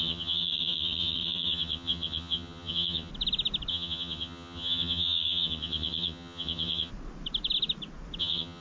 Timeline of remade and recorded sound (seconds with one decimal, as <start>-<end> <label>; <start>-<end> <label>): 0.0-3.1 remade; 3.1-3.7 recorded; 3.7-6.9 remade; 6.9-8.2 recorded; 8.2-8.6 remade